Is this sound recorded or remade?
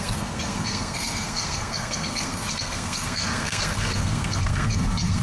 remade